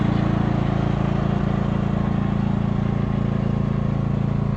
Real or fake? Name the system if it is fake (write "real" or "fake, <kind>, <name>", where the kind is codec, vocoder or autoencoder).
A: real